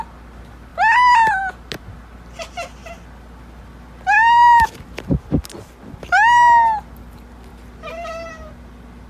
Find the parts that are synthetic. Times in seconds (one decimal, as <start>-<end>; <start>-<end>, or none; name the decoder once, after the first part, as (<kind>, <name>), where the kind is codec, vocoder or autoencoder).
none